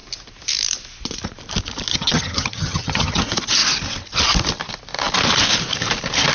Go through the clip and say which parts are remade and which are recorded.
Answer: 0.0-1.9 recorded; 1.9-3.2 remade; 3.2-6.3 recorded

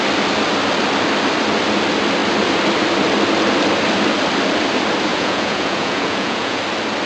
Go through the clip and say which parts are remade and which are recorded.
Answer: 0.0-5.1 recorded; 5.1-6.6 remade; 6.6-7.1 recorded